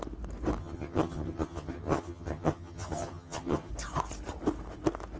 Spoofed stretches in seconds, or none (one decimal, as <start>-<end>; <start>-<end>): 0.6-3.7